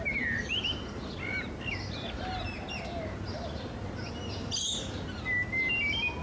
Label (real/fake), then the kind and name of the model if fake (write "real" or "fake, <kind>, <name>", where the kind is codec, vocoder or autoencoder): real